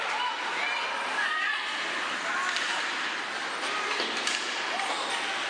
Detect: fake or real real